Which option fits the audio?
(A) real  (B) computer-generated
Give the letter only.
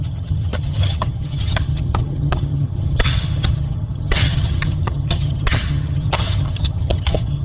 B